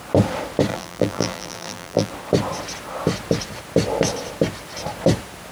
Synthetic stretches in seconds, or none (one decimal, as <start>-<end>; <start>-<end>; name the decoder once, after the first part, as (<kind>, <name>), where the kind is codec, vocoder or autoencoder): 0.7-2.1 (vocoder, BigVGAN v2)